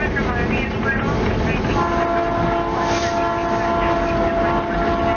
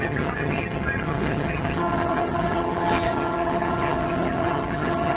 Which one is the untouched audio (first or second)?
first